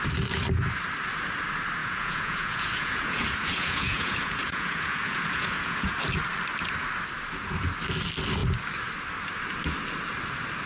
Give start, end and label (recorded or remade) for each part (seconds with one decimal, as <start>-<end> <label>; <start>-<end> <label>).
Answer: 0.0-1.8 recorded; 1.8-6.0 remade; 6.0-10.7 recorded